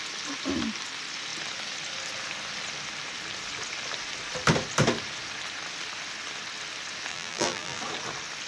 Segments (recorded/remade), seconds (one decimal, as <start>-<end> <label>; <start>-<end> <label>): 0.0-7.1 recorded; 7.1-7.8 remade; 7.8-8.5 recorded